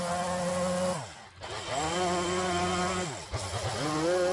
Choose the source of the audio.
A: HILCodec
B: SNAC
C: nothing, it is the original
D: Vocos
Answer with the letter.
C